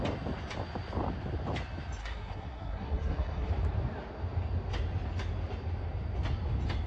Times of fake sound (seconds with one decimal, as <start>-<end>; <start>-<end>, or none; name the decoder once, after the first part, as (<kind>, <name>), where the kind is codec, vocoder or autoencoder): 2.0-3.5 (codec, SNAC)